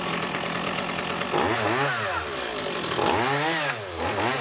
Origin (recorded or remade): recorded